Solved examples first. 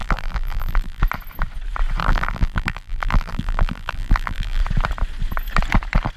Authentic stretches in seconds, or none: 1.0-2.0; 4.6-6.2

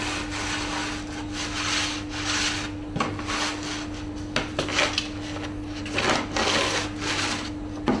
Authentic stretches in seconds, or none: 0.0-8.0